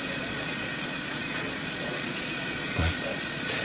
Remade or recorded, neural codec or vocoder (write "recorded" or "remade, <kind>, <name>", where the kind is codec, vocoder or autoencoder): remade, vocoder, Vocos